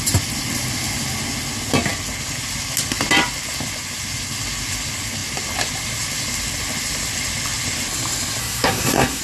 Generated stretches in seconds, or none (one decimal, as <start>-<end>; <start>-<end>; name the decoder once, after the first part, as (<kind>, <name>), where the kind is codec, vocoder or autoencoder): 8.4-9.2 (codec, SNAC)